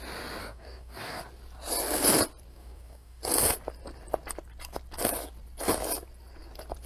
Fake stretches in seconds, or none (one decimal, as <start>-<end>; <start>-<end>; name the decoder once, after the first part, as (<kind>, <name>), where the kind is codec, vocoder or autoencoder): 0.4-1.2 (codec, DAC); 2.5-3.2